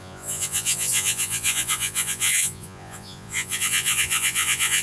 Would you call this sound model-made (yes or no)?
yes